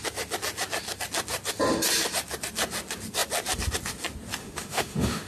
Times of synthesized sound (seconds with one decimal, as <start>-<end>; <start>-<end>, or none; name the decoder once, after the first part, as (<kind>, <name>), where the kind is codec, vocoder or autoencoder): 4.4-5.3 (autoencoder, DAC-VAE)